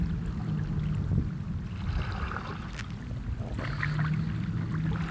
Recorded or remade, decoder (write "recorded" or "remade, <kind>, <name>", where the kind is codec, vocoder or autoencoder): recorded